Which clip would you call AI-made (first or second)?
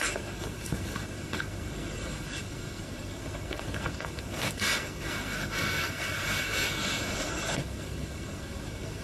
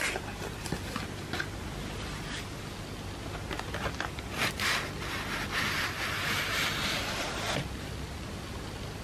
first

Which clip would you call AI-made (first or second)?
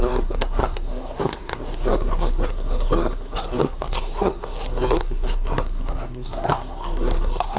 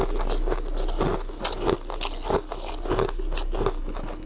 first